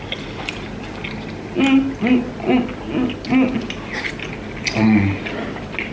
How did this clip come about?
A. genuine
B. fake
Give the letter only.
A